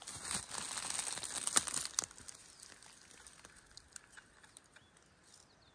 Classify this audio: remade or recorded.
recorded